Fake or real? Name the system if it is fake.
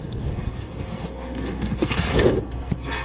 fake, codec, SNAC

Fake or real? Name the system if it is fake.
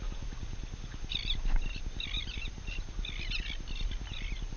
real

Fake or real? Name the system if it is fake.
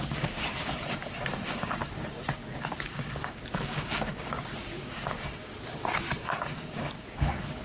fake, codec, DAC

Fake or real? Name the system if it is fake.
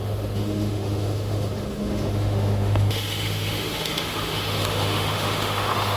fake, autoencoder, DAC-VAE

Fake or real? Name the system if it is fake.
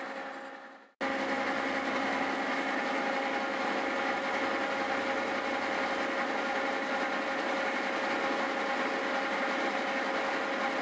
real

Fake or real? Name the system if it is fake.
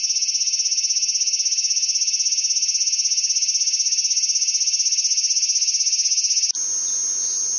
real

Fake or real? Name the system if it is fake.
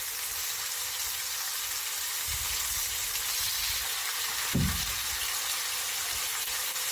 real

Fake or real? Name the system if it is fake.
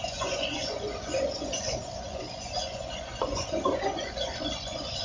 fake, vocoder, Vocos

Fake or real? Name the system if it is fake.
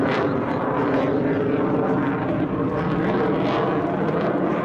real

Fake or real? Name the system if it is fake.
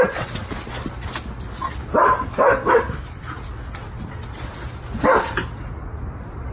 real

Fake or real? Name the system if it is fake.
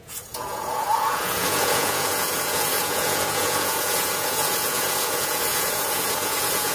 fake, vocoder, Vocos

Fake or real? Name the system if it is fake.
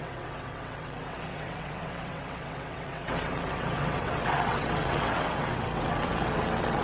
fake, vocoder, WaveNeXt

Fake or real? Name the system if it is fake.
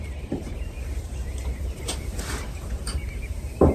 fake, vocoder, BigVGAN v2